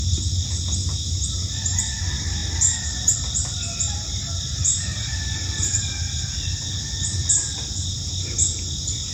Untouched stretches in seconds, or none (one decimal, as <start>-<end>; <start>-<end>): 0.0-0.8; 1.8-9.1